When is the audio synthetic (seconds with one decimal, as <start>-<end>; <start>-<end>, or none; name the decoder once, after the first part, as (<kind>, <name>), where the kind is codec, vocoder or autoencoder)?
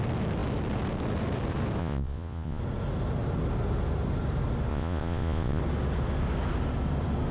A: 1.8-2.6 (vocoder, Vocos); 4.7-5.6